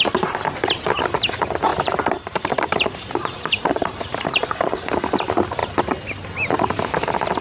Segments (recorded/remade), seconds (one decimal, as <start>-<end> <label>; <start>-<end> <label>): 0.0-1.7 recorded; 1.7-4.7 remade; 4.7-7.4 recorded